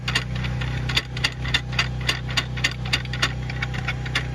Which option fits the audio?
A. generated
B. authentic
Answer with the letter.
B